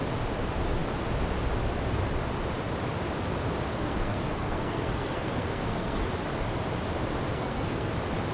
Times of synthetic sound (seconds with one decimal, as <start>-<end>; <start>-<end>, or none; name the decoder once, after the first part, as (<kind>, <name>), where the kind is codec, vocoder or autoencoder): 3.7-6.1 (codec, SNAC); 7.3-7.9